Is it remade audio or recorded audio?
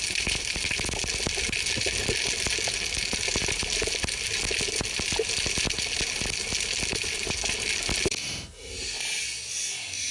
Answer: recorded